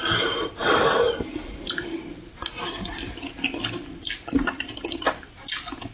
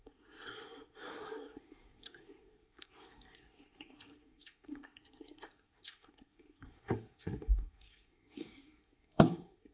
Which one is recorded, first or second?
first